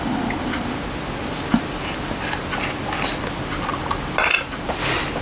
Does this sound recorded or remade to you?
recorded